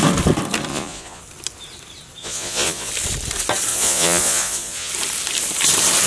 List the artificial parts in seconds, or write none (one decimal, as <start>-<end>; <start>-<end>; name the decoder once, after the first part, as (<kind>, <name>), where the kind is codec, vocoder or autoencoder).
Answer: 0.7-1.2 (vocoder, Vocos); 2.2-2.9; 3.7-4.9